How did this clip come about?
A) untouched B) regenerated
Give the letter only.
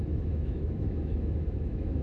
B